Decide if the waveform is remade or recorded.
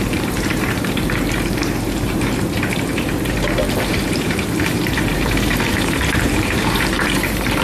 remade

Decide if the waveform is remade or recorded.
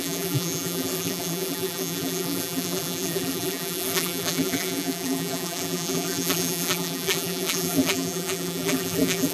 remade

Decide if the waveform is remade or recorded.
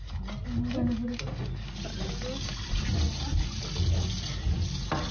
recorded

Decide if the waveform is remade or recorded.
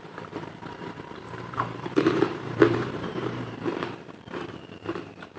remade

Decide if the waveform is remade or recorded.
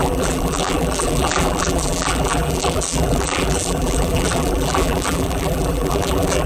remade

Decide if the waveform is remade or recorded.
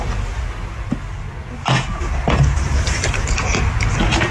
recorded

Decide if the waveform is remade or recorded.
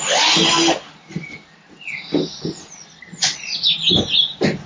recorded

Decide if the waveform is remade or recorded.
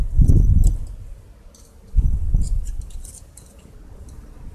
recorded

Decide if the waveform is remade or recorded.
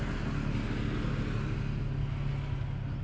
recorded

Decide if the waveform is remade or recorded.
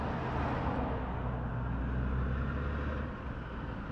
recorded